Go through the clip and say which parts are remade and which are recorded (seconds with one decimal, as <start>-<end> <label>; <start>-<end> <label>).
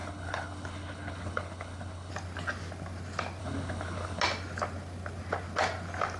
0.0-2.1 remade; 2.1-3.4 recorded; 3.4-4.2 remade; 4.2-6.2 recorded